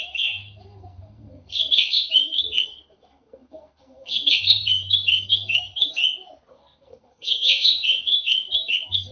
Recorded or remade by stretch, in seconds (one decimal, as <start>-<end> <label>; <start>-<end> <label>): 0.0-6.0 remade; 6.0-6.5 recorded; 6.5-9.1 remade